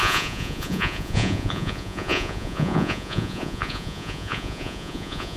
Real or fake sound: fake